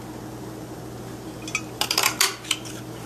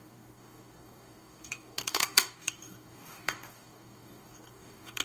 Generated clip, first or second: second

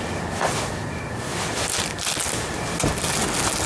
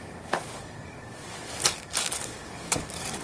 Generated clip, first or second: second